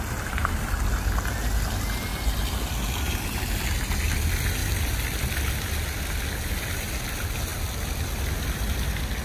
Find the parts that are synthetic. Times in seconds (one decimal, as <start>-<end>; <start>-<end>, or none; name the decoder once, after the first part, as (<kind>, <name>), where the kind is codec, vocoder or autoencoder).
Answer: none